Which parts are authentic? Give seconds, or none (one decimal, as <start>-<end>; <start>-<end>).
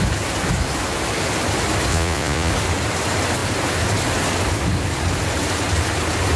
0.0-1.9; 2.5-6.4